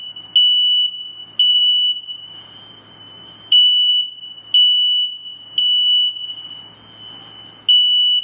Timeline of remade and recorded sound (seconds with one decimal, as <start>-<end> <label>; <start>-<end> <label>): 0.0-1.5 recorded; 1.5-3.9 remade; 3.9-8.2 recorded

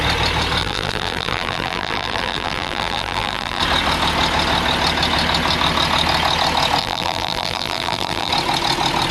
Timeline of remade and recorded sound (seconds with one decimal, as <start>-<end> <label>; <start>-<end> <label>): 0.0-0.6 recorded; 0.6-3.6 remade; 3.6-6.8 recorded; 6.8-8.3 remade; 8.3-9.1 recorded

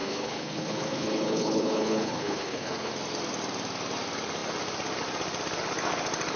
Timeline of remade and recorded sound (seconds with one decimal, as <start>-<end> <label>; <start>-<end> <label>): 0.0-2.9 remade; 2.9-6.4 recorded

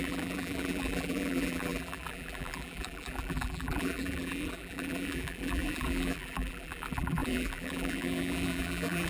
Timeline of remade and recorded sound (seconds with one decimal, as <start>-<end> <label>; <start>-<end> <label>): 0.0-9.1 remade

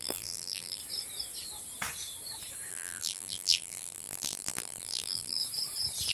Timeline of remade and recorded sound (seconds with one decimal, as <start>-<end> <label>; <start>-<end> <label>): 0.0-0.8 remade; 0.8-2.7 recorded; 2.7-5.4 remade; 5.4-6.1 recorded